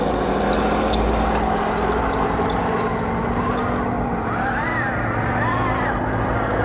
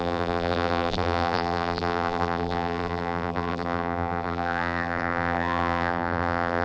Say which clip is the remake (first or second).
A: second